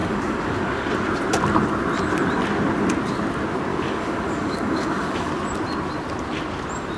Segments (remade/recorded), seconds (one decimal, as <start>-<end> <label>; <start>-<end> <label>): 0.0-0.9 remade; 0.9-3.7 recorded; 3.7-5.3 remade; 5.3-7.0 recorded